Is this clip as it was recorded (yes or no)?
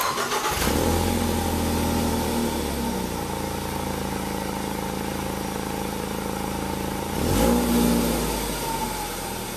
yes